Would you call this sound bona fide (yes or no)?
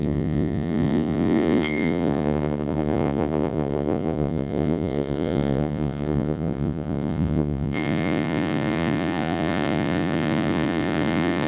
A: no